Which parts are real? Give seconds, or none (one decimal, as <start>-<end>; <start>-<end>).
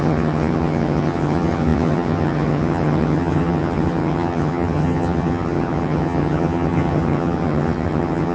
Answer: none